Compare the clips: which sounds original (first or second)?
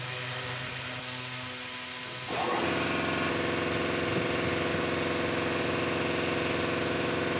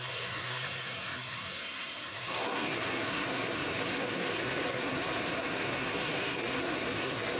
first